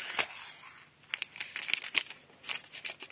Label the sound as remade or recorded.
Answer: recorded